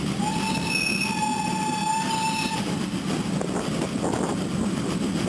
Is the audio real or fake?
real